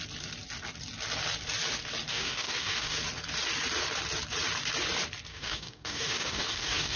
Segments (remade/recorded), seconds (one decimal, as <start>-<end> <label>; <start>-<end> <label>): 0.0-2.1 recorded; 2.1-3.0 remade; 3.0-5.3 recorded; 5.3-7.0 remade